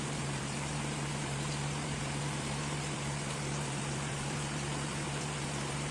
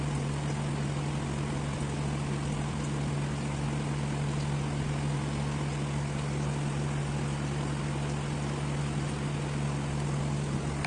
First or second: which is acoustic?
second